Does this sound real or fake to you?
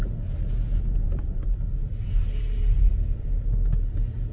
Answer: real